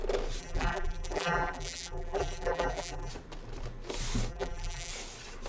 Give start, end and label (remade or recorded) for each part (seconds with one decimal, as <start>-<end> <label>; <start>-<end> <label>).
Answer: 0.0-0.4 recorded; 0.4-3.1 remade; 3.1-4.3 recorded; 4.3-4.9 remade; 4.9-5.5 recorded